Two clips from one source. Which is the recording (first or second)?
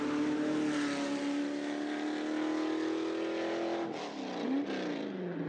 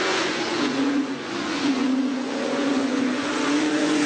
first